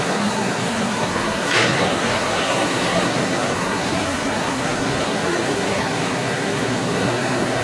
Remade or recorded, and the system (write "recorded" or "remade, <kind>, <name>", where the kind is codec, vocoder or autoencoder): remade, codec, SNAC